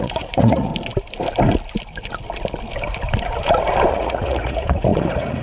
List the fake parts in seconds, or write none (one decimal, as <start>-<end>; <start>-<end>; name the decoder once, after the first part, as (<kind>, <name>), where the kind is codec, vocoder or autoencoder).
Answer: 0.0-0.7 (vocoder, Vocos); 3.9-5.4